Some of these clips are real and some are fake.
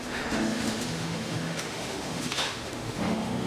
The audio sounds fake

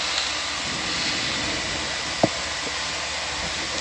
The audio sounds real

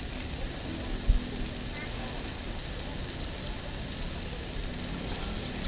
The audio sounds real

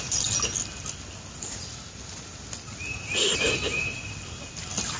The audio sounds real